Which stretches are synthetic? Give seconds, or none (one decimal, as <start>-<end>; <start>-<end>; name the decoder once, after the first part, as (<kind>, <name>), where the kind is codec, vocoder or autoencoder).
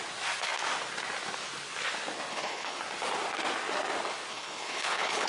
2.3-2.8 (codec, HILCodec); 4.3-5.3